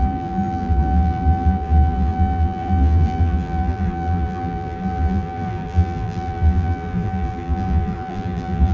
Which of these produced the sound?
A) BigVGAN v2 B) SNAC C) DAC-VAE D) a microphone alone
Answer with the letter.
A